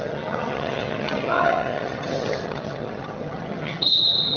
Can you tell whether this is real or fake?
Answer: fake